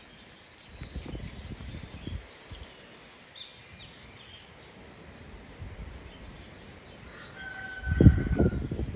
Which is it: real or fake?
real